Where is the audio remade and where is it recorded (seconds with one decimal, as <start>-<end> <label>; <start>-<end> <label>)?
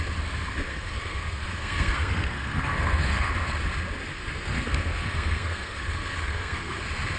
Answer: 0.0-0.7 recorded; 0.7-3.3 remade; 3.3-4.1 recorded; 4.1-6.8 remade; 6.8-7.2 recorded